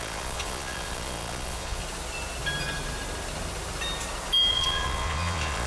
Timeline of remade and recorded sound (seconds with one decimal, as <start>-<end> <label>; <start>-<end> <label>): 0.0-1.8 remade; 1.8-4.5 recorded; 4.5-5.7 remade